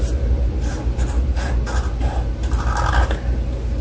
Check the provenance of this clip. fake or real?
real